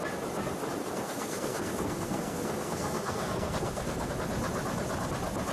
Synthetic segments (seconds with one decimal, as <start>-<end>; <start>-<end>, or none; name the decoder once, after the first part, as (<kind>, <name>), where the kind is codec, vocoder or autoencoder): 0.8-4.1 (codec, SNAC)